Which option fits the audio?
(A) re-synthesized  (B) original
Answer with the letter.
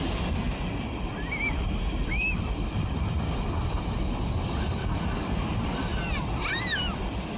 B